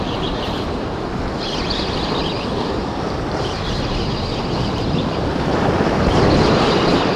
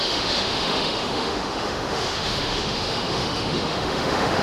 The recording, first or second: first